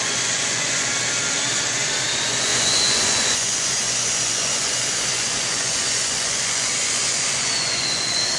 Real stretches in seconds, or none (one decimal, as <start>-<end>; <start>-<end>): 0.9-1.5